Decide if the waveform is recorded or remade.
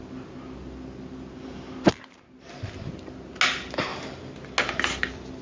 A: recorded